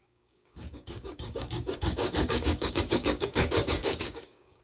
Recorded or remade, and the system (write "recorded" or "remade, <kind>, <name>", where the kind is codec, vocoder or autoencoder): remade, codec, DAC